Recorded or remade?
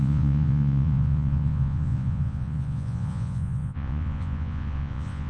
remade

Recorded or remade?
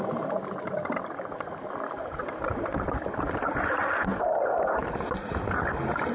recorded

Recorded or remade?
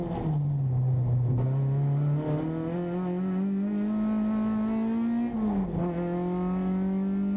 recorded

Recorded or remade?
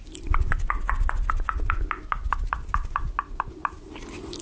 recorded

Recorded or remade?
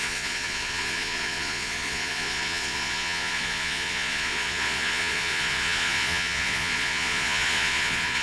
remade